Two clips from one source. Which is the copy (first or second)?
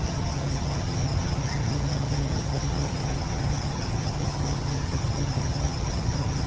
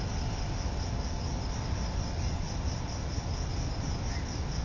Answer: first